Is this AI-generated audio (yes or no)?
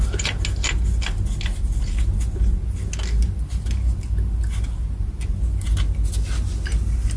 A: no